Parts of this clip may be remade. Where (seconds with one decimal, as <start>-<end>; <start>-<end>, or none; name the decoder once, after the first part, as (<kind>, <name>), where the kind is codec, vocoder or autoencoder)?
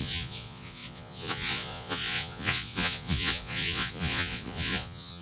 0.0-5.2 (vocoder, Vocos)